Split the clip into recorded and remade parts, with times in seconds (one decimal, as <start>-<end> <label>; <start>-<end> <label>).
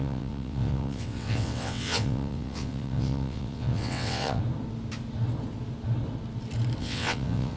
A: 0.0-4.4 remade; 4.4-6.8 recorded; 6.8-7.6 remade